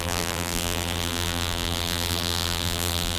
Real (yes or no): no